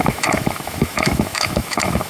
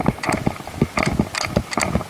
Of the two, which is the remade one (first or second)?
first